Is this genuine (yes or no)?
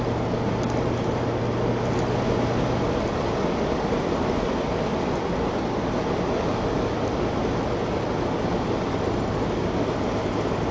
yes